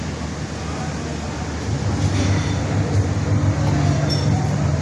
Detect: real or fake real